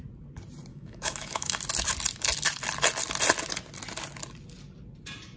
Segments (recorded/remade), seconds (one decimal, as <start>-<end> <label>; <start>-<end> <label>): 0.0-0.7 recorded; 0.7-1.6 remade; 1.6-5.4 recorded